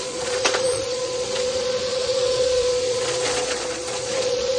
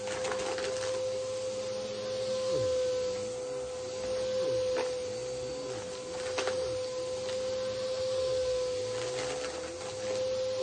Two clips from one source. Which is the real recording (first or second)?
second